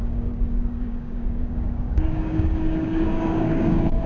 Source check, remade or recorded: remade